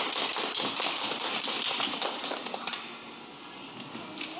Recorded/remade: recorded